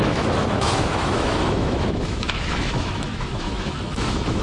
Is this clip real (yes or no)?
no